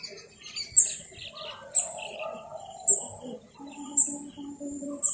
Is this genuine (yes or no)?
yes